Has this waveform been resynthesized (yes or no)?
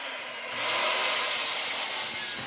no